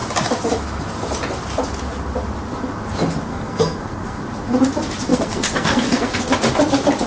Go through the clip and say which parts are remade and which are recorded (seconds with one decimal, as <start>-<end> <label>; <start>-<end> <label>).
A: 0.0-3.3 recorded; 3.3-4.2 remade; 4.2-5.1 recorded; 5.1-6.2 remade; 6.2-7.1 recorded